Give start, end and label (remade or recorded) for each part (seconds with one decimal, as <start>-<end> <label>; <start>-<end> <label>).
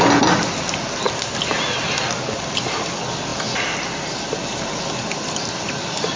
0.0-6.2 recorded